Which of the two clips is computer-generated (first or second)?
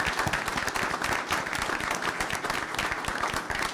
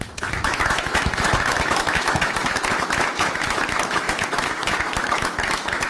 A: second